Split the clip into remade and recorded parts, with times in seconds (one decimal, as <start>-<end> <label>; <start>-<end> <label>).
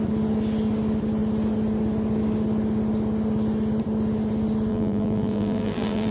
0.0-4.7 recorded; 4.7-6.1 remade